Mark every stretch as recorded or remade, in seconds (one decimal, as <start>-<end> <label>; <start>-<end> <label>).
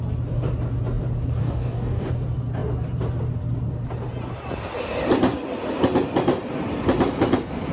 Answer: 0.0-1.4 recorded; 1.4-2.1 remade; 2.1-7.7 recorded